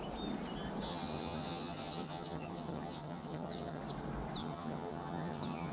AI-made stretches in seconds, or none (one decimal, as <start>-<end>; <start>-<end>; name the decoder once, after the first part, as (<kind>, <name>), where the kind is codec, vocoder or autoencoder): 0.9-3.8 (vocoder, HiFi-GAN); 4.4-5.7